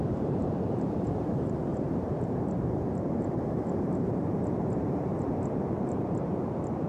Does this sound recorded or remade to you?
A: remade